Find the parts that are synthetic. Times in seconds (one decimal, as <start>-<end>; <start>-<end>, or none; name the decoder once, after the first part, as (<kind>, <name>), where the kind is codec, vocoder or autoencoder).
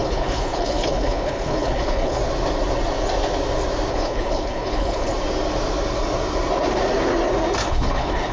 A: 0.0-2.2 (codec, HILCodec); 3.9-5.1; 7.6-8.3